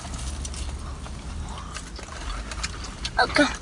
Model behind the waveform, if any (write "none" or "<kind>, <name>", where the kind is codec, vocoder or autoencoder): none